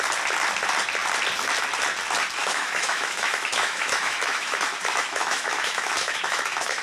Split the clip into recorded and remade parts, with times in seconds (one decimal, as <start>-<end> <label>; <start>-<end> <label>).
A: 0.0-2.4 recorded; 2.4-6.8 remade

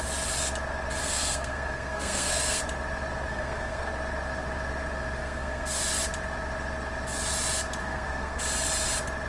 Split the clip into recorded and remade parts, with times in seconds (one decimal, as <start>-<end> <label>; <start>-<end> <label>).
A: 0.0-1.0 recorded; 1.0-2.6 remade; 2.6-3.3 recorded; 3.3-3.9 remade; 3.9-5.2 recorded; 5.2-5.8 remade; 5.8-7.8 recorded; 7.8-8.4 remade; 8.4-9.3 recorded

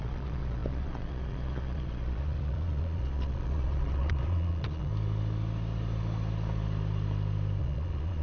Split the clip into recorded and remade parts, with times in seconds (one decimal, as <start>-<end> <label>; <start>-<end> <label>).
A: 0.0-4.9 remade; 4.9-7.6 recorded; 7.6-8.2 remade

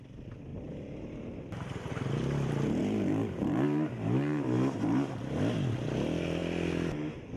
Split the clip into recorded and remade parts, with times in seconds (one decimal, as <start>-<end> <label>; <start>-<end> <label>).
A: 0.0-0.5 recorded; 0.5-1.9 remade; 1.9-2.8 recorded; 2.8-5.1 remade; 5.1-7.4 recorded

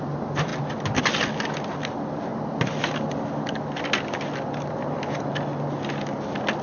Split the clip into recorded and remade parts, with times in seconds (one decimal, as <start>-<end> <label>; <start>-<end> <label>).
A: 0.0-6.6 recorded

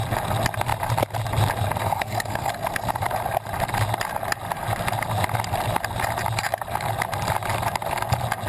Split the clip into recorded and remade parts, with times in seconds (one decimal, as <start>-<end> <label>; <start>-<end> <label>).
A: 0.0-1.8 recorded; 1.8-2.5 remade; 2.5-8.5 recorded

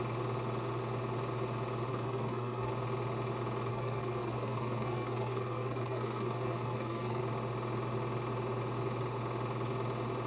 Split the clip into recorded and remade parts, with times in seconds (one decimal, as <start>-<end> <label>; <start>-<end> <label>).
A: 0.0-1.9 recorded; 1.9-2.7 remade; 2.7-3.7 recorded; 3.7-7.2 remade; 7.2-10.3 recorded

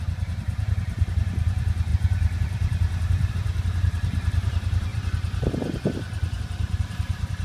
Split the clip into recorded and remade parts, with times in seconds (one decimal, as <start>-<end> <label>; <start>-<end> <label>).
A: 0.0-4.9 remade; 4.9-6.4 recorded; 6.4-7.4 remade